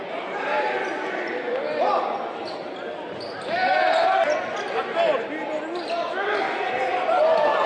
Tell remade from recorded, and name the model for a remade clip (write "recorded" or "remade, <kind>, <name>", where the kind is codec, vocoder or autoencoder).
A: recorded